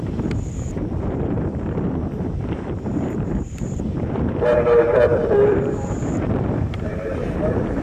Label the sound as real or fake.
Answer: fake